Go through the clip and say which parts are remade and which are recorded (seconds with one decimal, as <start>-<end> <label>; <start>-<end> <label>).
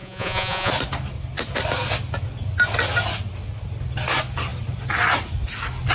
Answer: 0.0-0.7 remade; 0.7-5.9 recorded